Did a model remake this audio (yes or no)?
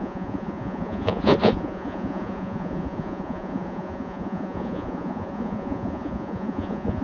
yes